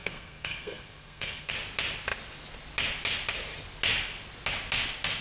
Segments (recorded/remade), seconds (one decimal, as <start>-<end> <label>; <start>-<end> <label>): 0.0-1.5 remade; 1.5-5.2 recorded